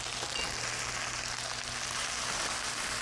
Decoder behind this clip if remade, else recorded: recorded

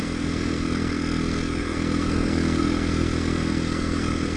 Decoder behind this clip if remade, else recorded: remade, codec, SNAC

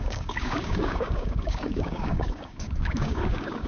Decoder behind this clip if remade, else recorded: remade, codec, DAC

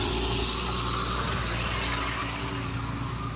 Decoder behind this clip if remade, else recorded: recorded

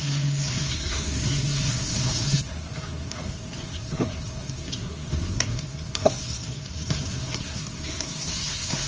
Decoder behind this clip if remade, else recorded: remade, codec, SNAC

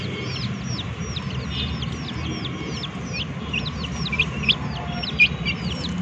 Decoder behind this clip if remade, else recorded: recorded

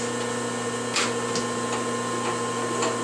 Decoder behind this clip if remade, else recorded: recorded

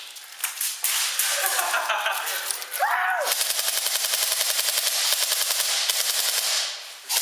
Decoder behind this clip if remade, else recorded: recorded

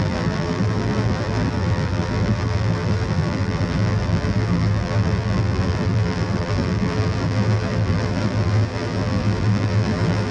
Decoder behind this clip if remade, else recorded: remade, vocoder, BigVGAN v2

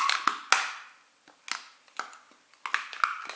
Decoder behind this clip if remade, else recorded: recorded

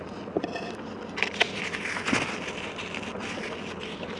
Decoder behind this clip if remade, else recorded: recorded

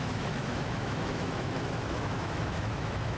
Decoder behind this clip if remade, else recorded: remade, autoencoder, DAC-VAE